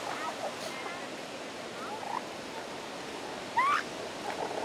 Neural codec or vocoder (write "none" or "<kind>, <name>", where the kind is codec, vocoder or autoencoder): none